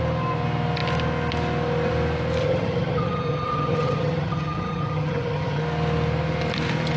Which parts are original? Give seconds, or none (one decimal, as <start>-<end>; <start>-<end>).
0.0-2.4; 5.6-7.0